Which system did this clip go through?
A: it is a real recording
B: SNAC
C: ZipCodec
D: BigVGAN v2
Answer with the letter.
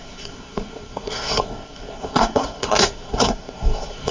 B